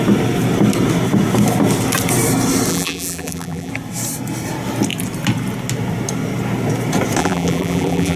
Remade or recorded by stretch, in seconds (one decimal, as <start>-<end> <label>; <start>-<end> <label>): 0.0-2.7 recorded; 2.7-3.7 remade; 3.7-7.2 recorded; 7.2-8.2 remade